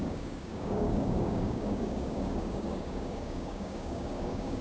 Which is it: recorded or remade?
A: remade